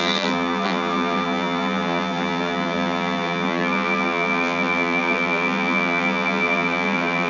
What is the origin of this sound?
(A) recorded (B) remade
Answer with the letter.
B